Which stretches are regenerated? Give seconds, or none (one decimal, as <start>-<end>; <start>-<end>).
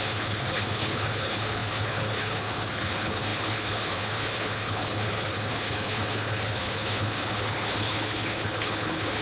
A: 0.0-9.2